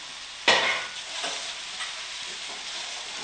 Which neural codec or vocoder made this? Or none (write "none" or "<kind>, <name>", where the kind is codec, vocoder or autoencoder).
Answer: none